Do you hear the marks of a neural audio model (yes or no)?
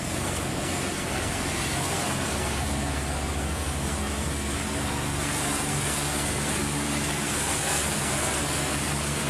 yes